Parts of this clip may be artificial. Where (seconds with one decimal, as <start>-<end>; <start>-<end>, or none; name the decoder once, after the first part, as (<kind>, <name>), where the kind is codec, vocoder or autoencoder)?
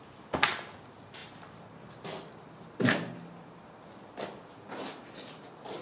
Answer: none